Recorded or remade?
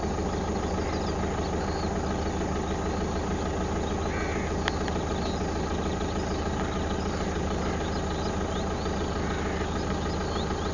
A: recorded